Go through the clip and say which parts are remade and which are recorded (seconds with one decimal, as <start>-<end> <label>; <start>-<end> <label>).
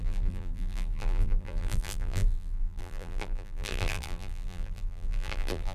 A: 0.0-5.7 remade